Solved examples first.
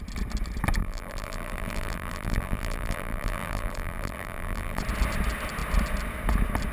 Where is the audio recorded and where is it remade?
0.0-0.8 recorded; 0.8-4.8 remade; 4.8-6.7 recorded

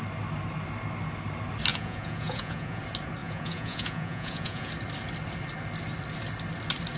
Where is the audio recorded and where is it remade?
0.0-1.7 recorded; 1.7-2.8 remade; 2.8-3.2 recorded; 3.2-4.7 remade; 4.7-7.0 recorded

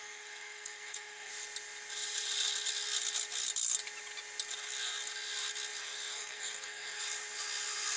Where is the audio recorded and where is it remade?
0.0-1.3 remade; 1.3-5.8 recorded; 5.8-7.0 remade; 7.0-8.0 recorded

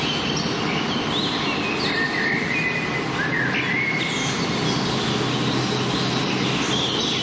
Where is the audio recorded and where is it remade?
0.0-7.2 recorded

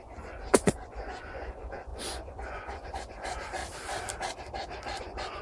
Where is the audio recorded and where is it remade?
0.0-3.6 remade; 3.6-5.0 recorded; 5.0-5.4 remade

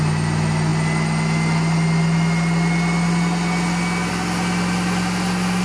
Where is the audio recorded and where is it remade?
0.0-5.6 recorded

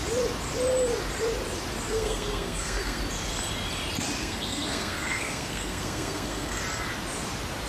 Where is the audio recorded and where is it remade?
0.0-1.9 recorded; 1.9-3.0 remade; 3.0-4.2 recorded; 4.2-6.6 remade; 6.6-7.7 recorded